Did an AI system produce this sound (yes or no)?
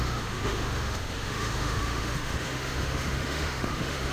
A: yes